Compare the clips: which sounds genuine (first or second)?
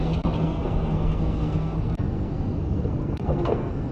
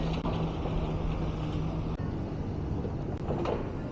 second